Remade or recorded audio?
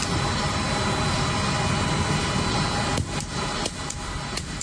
recorded